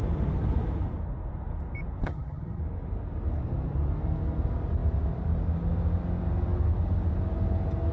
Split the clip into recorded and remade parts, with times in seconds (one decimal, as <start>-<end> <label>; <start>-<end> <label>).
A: 0.0-2.0 recorded; 2.0-2.6 remade; 2.6-7.9 recorded